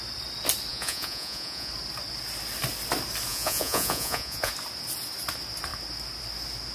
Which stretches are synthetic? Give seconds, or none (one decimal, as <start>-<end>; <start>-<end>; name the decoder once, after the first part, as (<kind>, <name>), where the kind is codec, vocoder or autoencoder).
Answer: 0.7-1.7 (vocoder, Vocos); 3.3-4.5